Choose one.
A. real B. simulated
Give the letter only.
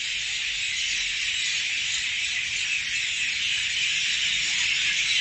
A